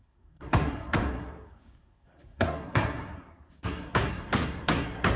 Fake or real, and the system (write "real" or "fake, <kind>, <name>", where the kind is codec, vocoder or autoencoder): fake, codec, SNAC